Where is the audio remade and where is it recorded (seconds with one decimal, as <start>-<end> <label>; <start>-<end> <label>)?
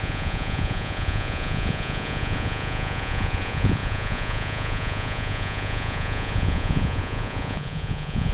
0.0-8.3 remade